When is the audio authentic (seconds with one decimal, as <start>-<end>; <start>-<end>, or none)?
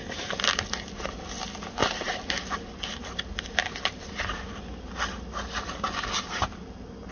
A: 0.0-7.1